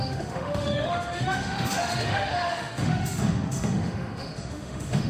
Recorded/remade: remade